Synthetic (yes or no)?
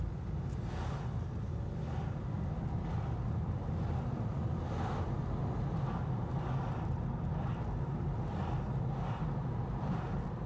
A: no